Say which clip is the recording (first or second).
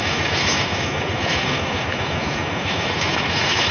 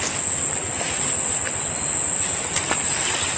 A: second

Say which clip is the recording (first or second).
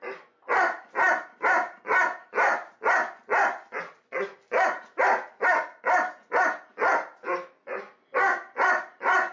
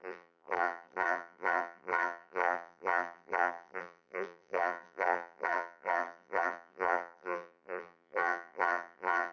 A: first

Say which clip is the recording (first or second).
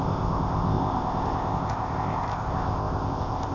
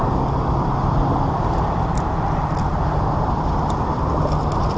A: second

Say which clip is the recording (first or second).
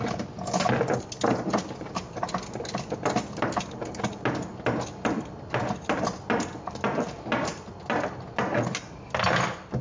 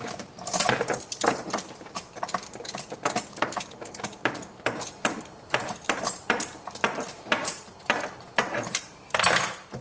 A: first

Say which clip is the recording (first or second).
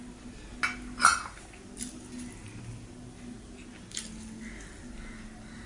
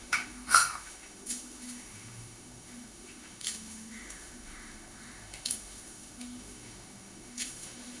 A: first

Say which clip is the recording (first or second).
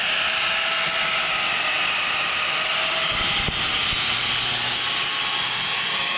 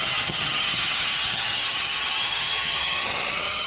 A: first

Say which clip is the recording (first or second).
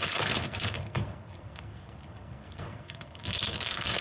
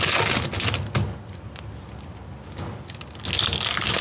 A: second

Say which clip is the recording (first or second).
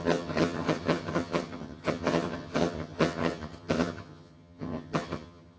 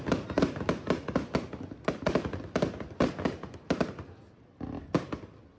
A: second